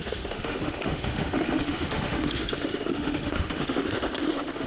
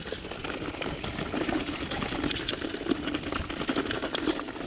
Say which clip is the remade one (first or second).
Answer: first